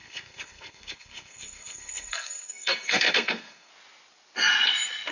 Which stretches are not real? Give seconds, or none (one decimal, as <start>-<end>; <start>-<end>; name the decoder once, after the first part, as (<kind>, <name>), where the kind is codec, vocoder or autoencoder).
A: 0.0-3.7 (codec, SNAC)